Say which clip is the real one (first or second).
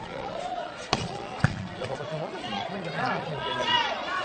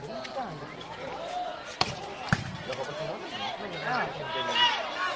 second